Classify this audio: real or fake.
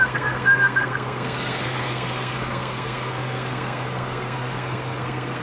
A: fake